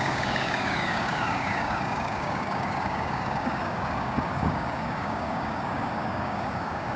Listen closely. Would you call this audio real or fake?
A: fake